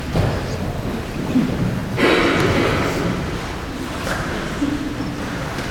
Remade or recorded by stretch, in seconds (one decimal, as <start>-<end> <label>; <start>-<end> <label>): 0.0-5.7 recorded

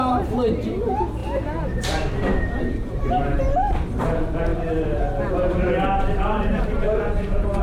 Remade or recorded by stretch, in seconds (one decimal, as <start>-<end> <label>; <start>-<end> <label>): 0.0-7.6 remade